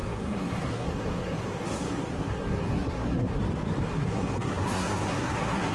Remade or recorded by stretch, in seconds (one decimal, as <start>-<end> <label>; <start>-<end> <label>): 0.0-3.4 remade; 3.4-3.9 recorded; 3.9-5.7 remade